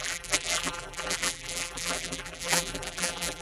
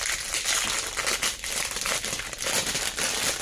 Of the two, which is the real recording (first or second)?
second